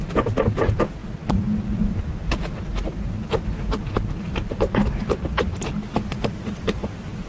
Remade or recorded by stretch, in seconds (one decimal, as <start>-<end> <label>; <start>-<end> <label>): 0.0-7.3 recorded